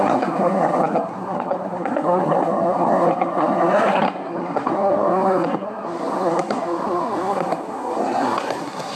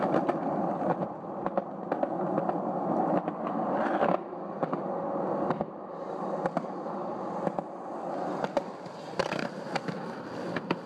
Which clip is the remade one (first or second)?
first